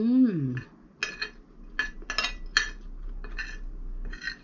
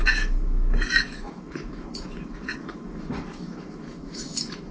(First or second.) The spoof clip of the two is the second